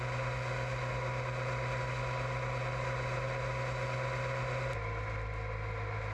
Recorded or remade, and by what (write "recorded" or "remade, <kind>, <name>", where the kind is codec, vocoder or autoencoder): recorded